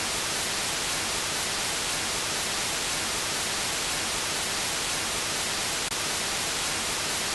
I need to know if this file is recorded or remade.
recorded